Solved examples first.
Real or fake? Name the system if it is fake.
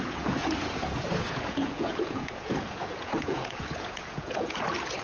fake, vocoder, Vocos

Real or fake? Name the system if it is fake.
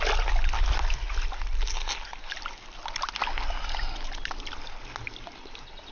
real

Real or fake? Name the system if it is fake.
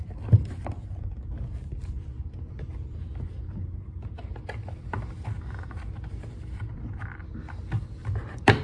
fake, vocoder, BigVGAN v2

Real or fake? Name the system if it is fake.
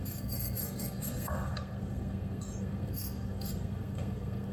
fake, codec, SNAC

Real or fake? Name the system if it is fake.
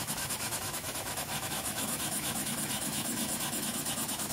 fake, autoencoder, DAC-VAE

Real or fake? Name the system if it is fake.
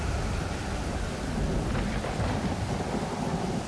real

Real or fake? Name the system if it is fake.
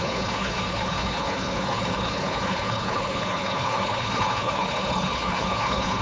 fake, codec, HILCodec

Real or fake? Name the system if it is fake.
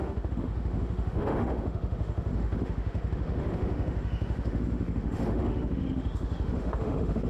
fake, autoencoder, DAC-VAE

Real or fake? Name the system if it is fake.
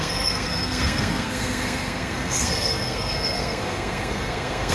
fake, codec, SNAC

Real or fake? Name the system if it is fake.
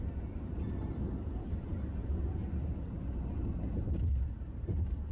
real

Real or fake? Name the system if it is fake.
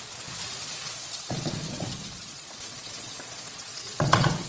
fake, vocoder, Vocos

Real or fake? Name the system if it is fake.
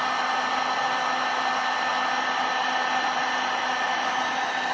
real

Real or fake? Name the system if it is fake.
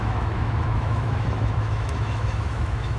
fake, autoencoder, DAC-VAE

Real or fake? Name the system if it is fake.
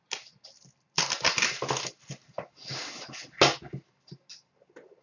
real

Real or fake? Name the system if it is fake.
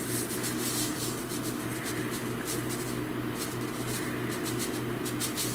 real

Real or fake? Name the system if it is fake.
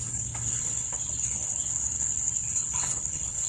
fake, codec, HILCodec